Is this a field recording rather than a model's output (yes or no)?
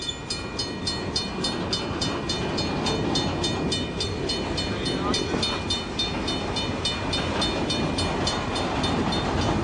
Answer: yes